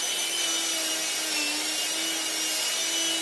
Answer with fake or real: real